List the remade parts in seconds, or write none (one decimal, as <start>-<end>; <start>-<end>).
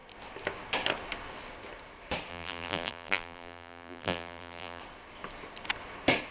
2.3-4.8